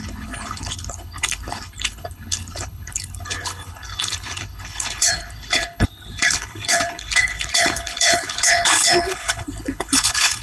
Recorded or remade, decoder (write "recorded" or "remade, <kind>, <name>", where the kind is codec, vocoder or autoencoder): remade, codec, HILCodec